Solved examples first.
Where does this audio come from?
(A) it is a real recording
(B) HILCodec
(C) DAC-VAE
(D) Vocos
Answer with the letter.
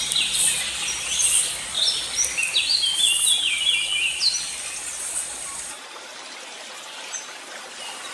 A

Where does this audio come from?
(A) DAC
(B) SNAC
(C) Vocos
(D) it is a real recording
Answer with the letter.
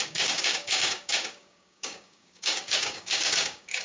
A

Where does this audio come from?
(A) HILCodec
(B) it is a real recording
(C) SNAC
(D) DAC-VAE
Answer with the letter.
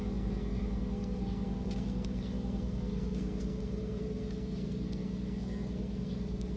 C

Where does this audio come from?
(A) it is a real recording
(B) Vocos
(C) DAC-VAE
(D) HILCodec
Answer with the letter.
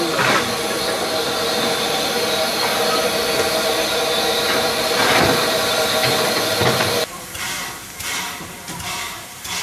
A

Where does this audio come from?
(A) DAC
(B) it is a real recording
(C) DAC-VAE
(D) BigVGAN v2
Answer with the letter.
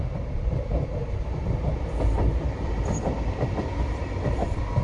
B